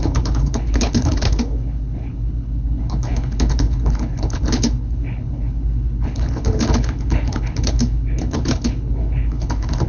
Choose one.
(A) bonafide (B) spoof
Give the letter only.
B